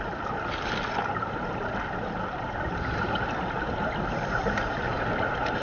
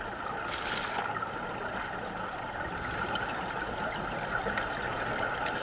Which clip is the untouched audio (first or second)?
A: second